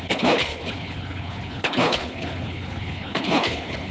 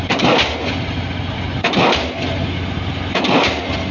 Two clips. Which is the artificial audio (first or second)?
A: first